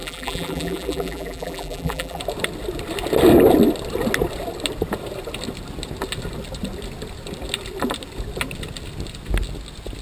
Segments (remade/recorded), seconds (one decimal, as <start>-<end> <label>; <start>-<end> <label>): 0.0-2.2 remade; 2.2-10.0 recorded